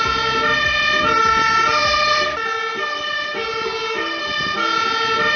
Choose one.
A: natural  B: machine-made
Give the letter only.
A